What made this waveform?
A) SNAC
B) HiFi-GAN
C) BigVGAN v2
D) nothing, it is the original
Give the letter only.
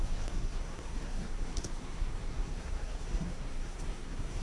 A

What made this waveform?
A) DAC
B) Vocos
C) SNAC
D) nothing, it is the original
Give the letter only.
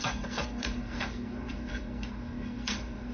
C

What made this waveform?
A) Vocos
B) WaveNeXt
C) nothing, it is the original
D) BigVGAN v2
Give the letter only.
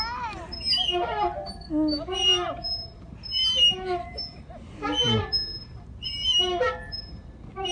C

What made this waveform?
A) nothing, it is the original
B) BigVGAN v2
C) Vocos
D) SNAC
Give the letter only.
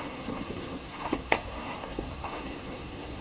D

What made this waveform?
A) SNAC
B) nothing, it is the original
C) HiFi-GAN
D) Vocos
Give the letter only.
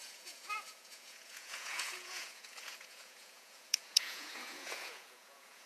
D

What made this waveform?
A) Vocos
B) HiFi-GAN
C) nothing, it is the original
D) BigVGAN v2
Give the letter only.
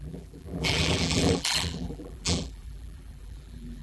D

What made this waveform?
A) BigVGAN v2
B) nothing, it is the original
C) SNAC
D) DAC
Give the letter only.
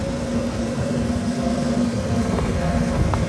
C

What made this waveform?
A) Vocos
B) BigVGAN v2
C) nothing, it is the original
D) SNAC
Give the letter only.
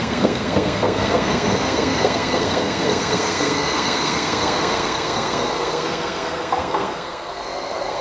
D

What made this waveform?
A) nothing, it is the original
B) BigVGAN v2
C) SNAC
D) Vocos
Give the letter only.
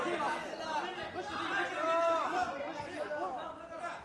A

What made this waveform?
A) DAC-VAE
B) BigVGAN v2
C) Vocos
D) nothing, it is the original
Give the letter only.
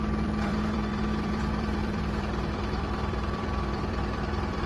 B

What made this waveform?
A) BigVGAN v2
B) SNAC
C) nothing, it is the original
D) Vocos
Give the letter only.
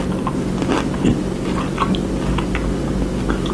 C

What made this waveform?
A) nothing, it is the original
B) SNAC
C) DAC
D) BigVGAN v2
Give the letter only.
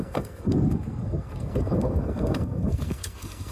B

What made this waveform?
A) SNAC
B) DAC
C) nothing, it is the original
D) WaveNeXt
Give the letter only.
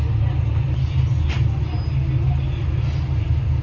C